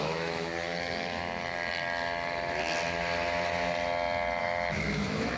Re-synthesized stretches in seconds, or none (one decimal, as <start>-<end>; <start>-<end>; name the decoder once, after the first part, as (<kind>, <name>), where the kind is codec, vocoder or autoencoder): 0.0-1.2 (autoencoder, DAC-VAE); 4.4-5.4